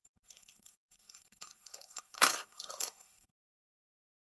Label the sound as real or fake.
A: fake